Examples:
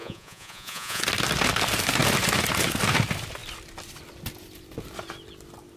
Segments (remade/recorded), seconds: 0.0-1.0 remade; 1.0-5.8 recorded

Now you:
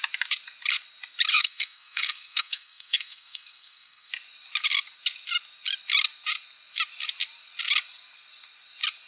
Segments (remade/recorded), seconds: 0.0-1.3 recorded; 1.3-4.1 remade; 4.1-9.1 recorded

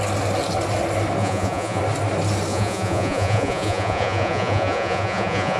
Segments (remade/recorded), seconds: 0.0-1.2 recorded; 1.2-1.8 remade; 1.8-2.5 recorded; 2.5-5.6 remade